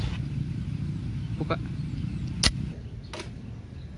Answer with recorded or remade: recorded